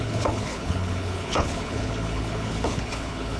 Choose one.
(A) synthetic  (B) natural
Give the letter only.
A